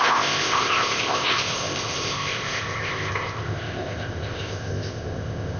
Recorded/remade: remade